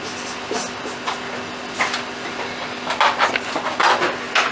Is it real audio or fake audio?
real